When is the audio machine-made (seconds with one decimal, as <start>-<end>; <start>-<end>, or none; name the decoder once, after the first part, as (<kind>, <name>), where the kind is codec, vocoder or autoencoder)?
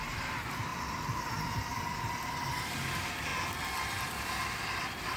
0.0-3.3 (vocoder, BigVGAN v2); 3.8-5.2